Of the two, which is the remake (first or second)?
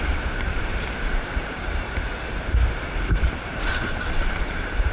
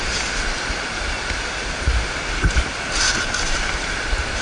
first